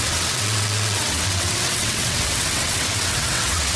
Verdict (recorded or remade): remade